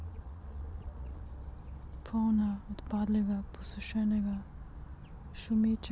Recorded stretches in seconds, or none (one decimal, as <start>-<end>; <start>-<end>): 1.2-5.9